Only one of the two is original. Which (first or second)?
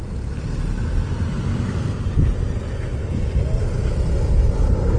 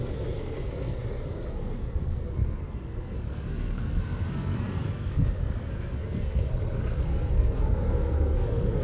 first